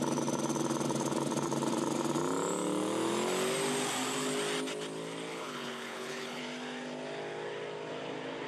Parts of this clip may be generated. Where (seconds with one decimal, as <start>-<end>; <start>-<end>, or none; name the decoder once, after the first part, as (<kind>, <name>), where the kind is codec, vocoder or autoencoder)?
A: 5.3-6.4 (codec, HILCodec)